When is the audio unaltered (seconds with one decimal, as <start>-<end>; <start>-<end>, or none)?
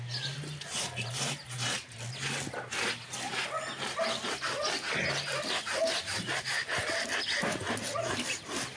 0.0-8.8